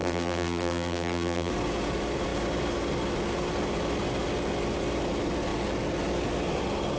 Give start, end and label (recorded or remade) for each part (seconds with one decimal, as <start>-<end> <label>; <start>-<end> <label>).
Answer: 0.0-1.5 remade; 1.5-7.0 recorded